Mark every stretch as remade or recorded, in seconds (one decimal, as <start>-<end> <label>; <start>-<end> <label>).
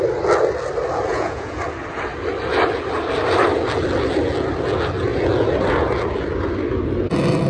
0.0-1.1 recorded; 1.1-1.6 remade; 1.6-7.5 recorded